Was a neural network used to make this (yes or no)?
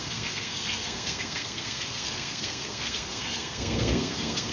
yes